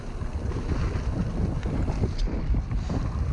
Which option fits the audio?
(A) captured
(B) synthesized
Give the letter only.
A